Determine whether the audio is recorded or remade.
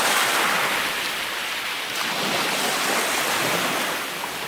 recorded